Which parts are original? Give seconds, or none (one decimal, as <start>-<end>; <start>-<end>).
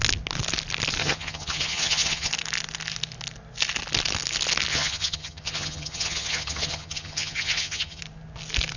0.0-1.0; 2.3-4.7; 8.0-8.8